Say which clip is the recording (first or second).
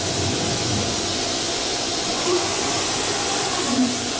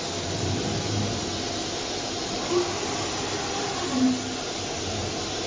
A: second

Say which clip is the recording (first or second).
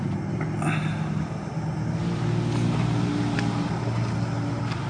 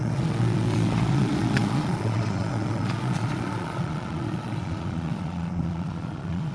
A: first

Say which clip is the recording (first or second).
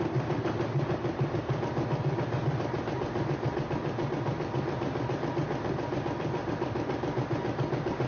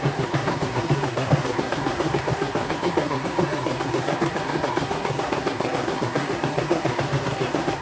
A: first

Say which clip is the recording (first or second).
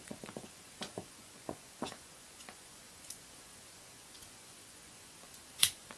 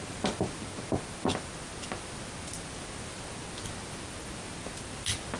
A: second